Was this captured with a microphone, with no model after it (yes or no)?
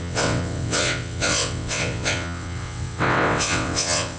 no